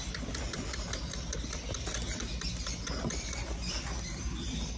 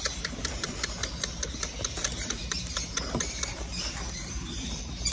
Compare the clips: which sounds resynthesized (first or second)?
second